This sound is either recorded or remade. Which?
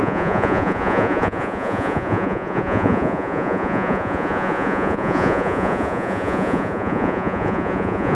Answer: remade